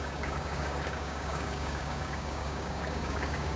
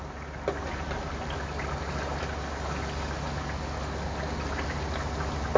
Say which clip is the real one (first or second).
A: second